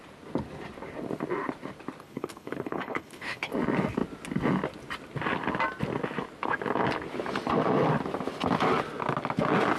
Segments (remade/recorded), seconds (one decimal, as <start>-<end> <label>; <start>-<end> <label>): 0.0-2.0 recorded; 2.0-3.5 remade; 3.5-9.8 recorded